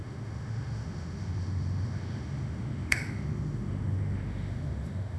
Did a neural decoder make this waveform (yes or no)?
yes